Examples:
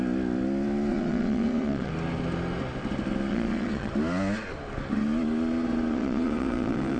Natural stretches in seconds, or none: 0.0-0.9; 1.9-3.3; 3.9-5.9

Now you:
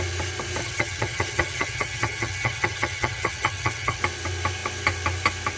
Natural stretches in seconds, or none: 0.0-0.6; 4.0-5.6

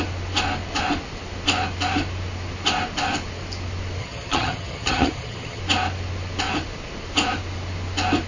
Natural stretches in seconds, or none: 0.0-4.0; 5.6-8.3

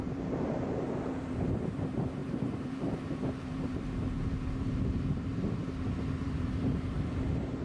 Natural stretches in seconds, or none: 5.6-6.2

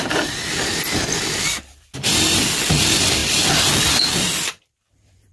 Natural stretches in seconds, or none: 0.0-5.3

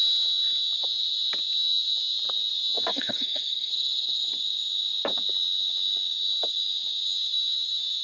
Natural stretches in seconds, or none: 0.0-2.9; 3.7-8.0

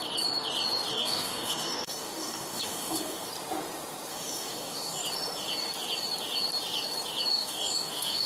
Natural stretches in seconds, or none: 0.0-0.9; 3.3-4.1; 5.0-7.3

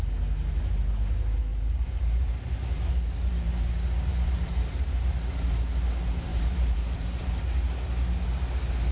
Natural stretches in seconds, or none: 0.0-1.5; 5.1-6.3; 7.3-8.9